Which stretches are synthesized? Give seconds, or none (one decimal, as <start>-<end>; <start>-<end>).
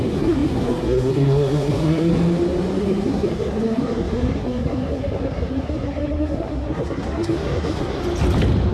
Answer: 0.0-2.1; 2.8-8.0